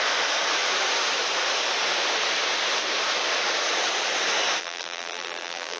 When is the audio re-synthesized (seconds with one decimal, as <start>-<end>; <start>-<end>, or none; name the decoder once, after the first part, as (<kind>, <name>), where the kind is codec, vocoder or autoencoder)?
4.6-5.8 (vocoder, BigVGAN v2)